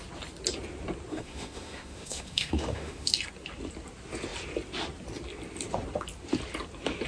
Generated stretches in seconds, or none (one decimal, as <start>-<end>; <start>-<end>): 1.1-3.1